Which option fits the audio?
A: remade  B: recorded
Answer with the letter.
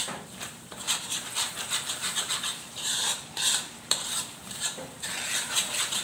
A